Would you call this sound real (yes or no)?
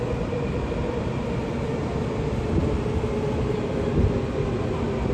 yes